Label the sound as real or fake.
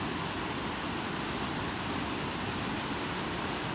fake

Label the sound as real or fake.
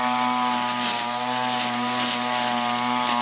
real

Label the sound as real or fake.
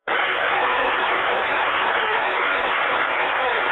fake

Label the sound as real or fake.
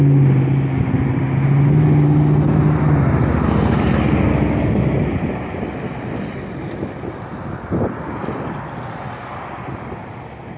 real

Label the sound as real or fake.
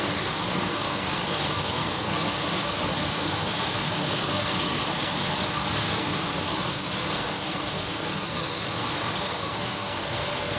fake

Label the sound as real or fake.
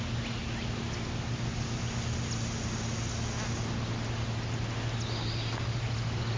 real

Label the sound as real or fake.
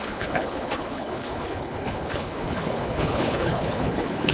fake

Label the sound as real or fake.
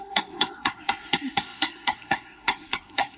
fake